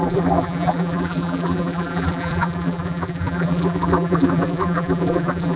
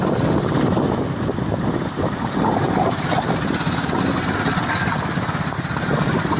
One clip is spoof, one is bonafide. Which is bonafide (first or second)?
second